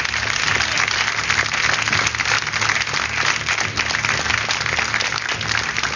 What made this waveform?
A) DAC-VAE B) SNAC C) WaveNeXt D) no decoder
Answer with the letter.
D